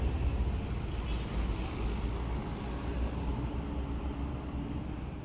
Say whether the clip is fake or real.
real